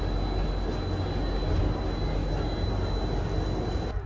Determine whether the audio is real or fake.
real